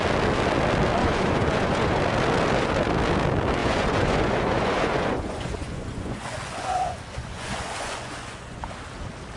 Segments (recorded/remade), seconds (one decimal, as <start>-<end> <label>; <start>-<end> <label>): 0.0-1.0 recorded; 1.0-2.0 remade; 2.0-3.6 recorded; 3.6-8.7 remade; 8.7-9.4 recorded